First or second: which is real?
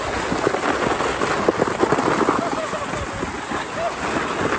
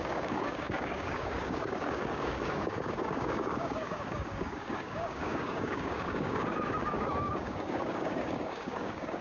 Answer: first